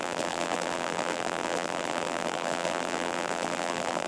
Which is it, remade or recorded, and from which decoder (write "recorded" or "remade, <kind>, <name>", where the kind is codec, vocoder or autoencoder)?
remade, vocoder, BigVGAN v2